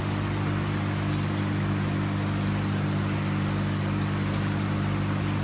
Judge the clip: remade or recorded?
recorded